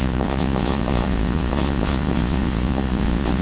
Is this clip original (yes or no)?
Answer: no